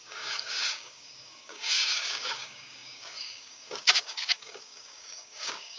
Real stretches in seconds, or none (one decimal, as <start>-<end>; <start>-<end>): none